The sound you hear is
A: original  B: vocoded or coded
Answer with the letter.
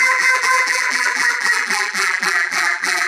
B